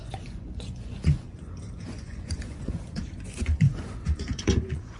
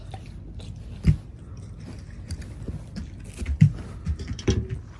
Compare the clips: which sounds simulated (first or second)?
first